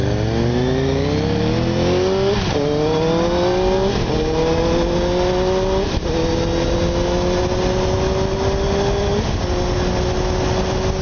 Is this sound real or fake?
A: real